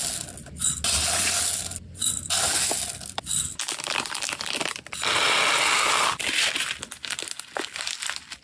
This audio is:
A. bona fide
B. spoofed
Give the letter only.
A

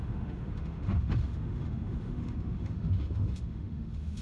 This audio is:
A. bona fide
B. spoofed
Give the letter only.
B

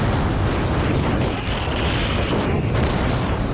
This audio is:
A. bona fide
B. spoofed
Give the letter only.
A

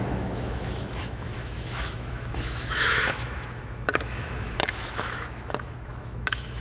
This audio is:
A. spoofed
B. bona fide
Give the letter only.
A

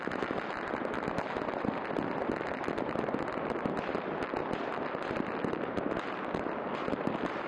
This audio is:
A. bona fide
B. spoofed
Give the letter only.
A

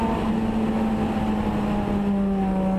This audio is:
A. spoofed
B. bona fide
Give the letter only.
B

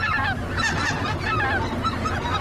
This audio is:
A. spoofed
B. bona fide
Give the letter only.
B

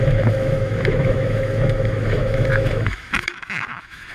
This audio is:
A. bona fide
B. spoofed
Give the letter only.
B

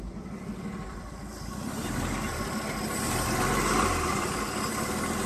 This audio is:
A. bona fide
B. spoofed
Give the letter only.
A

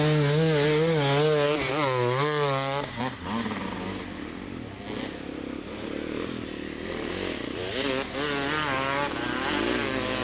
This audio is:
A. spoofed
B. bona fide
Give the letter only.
B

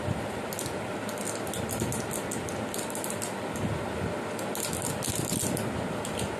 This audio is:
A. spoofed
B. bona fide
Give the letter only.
B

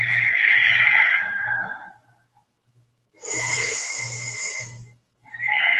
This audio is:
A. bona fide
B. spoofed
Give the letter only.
B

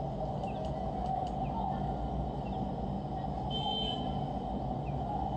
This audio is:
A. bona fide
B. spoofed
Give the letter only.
A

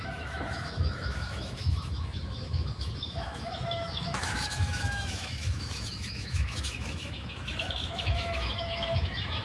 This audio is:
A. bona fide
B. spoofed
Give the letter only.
B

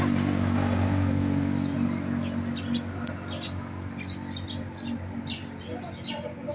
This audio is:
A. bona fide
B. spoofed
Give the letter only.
A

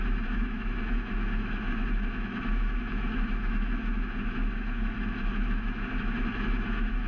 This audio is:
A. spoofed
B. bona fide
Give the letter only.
A